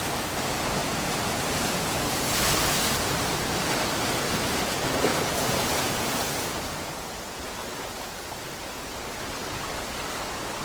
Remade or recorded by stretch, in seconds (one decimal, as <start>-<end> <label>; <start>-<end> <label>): 0.0-0.8 recorded; 0.8-2.4 remade; 2.4-5.1 recorded; 5.1-8.9 remade; 8.9-10.6 recorded